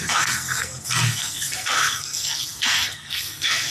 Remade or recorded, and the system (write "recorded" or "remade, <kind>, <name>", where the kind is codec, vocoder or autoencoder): remade, codec, SNAC